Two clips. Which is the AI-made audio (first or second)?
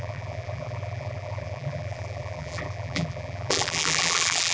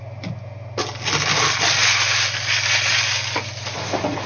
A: first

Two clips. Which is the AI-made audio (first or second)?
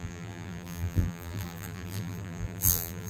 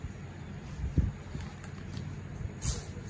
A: first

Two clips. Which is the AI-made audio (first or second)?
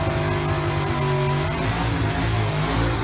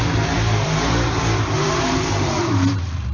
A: second